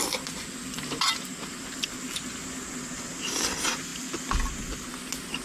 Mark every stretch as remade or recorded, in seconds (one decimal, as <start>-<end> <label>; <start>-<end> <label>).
0.0-5.4 recorded